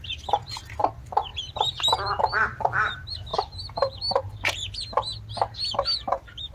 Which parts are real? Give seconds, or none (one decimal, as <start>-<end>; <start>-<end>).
0.0-6.5